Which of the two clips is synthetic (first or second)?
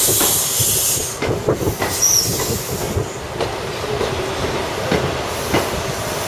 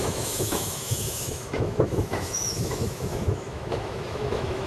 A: second